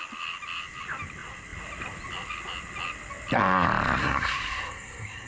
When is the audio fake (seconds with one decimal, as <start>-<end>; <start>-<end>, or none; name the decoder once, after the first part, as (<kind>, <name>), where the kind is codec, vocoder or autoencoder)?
4.0-5.3 (codec, SNAC)